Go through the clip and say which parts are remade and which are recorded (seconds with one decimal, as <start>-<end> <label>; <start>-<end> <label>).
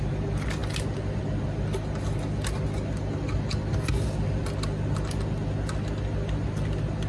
0.0-7.1 recorded